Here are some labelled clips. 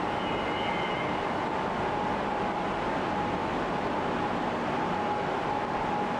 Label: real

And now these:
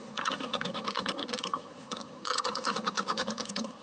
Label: fake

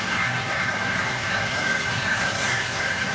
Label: fake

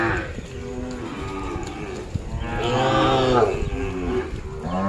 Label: real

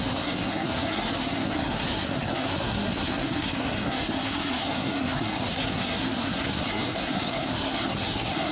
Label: fake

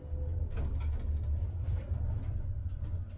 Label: real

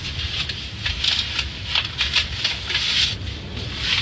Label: real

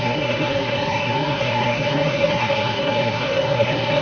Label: fake